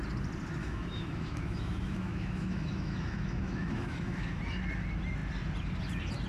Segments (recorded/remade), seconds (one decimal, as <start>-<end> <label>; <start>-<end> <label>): 0.0-0.6 recorded; 0.6-4.4 remade; 4.4-6.3 recorded